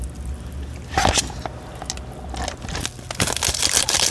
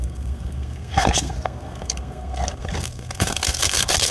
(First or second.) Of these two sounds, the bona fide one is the first